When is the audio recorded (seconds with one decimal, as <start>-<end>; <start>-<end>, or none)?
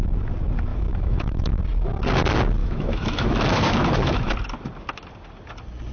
0.0-0.7; 1.6-2.6; 4.3-5.9